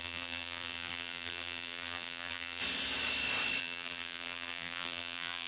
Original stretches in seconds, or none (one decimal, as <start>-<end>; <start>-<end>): 2.6-3.6